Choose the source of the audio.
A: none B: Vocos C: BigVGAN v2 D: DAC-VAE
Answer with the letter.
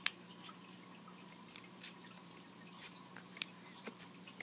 C